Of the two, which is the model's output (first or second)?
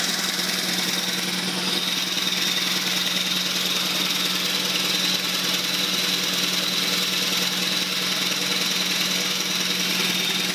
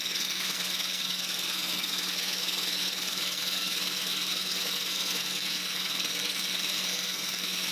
second